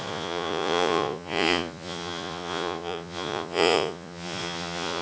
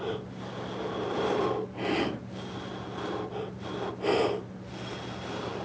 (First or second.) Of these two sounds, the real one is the second